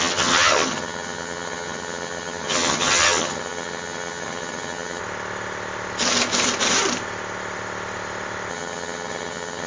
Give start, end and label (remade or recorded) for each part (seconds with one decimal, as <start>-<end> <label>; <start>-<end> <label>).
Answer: 0.0-5.0 remade; 5.0-8.5 recorded; 8.5-9.7 remade